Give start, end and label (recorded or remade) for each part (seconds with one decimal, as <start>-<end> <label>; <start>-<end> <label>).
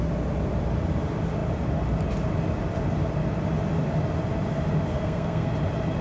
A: 0.0-4.9 recorded; 4.9-5.5 remade; 5.5-6.0 recorded